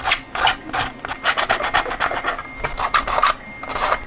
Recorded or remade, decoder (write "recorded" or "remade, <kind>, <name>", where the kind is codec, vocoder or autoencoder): recorded